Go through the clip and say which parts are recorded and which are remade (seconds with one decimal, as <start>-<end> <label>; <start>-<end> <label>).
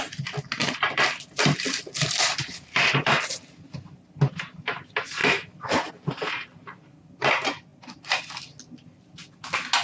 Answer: 0.0-0.6 recorded; 0.6-3.1 remade; 3.1-7.7 recorded; 7.7-8.2 remade; 8.2-9.8 recorded